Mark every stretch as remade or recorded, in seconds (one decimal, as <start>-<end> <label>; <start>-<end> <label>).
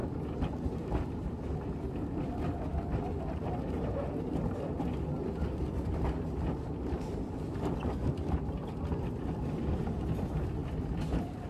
0.0-11.5 recorded